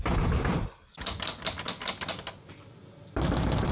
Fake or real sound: real